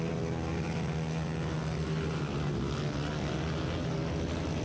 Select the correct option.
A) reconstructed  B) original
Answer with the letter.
B